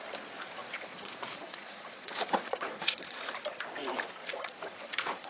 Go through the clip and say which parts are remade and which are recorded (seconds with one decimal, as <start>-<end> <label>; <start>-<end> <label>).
0.0-0.6 recorded; 0.6-3.3 remade; 3.3-4.2 recorded; 4.2-5.3 remade